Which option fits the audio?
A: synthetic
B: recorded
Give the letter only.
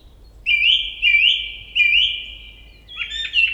B